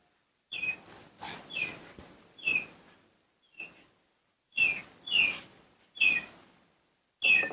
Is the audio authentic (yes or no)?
yes